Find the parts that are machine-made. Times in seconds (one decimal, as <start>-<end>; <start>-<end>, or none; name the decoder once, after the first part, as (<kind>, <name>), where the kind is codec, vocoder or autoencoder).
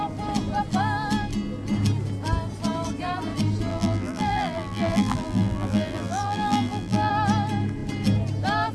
3.7-7.1 (vocoder, BigVGAN v2)